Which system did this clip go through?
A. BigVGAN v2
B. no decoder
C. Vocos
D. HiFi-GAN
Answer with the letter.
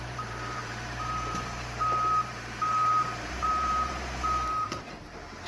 A